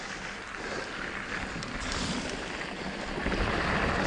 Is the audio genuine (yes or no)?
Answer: yes